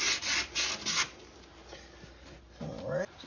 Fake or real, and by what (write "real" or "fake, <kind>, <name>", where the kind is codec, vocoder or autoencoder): real